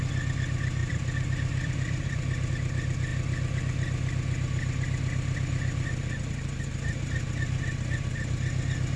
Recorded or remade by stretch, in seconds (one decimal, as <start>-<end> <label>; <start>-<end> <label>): 0.0-0.8 recorded; 0.8-2.5 remade; 2.5-9.0 recorded

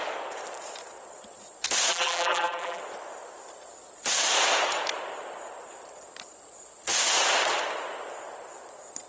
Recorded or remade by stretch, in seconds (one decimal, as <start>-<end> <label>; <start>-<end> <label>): 0.0-1.9 recorded; 1.9-2.8 remade; 2.8-9.1 recorded

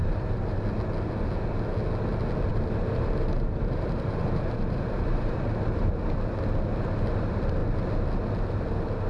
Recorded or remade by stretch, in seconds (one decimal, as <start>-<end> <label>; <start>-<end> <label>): 0.0-0.6 remade; 0.6-2.5 recorded; 2.5-6.0 remade; 6.0-9.1 recorded

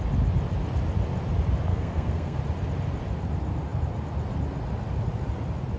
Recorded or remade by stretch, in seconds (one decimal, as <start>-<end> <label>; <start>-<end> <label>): 0.0-1.7 recorded; 1.7-2.4 remade; 2.4-5.8 recorded

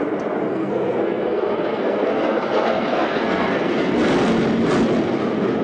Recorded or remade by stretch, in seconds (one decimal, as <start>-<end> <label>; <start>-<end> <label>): 0.0-0.5 recorded; 0.5-3.9 remade; 3.9-5.6 recorded

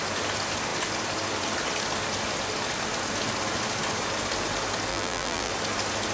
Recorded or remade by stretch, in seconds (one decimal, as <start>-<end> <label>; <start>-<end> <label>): 0.0-4.9 recorded; 4.9-5.5 remade; 5.5-6.1 recorded

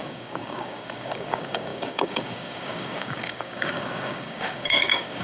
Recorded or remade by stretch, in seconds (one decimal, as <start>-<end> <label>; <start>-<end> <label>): 0.0-5.2 remade

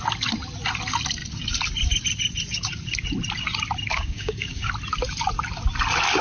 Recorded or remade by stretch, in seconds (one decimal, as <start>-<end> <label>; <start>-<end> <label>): 0.0-3.9 recorded; 3.9-4.7 remade; 4.7-6.2 recorded